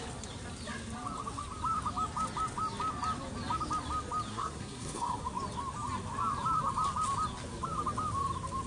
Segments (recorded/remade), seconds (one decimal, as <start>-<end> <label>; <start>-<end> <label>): 0.0-4.3 recorded; 4.3-5.2 remade; 5.2-8.7 recorded